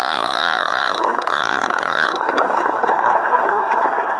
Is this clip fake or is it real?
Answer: fake